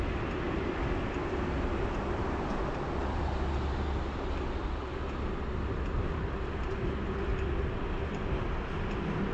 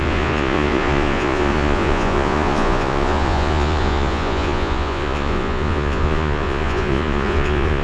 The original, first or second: first